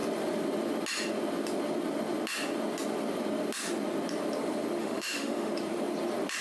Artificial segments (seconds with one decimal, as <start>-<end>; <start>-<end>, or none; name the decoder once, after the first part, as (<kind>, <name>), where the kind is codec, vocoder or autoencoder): 4.8-5.5 (autoencoder, DAC-VAE)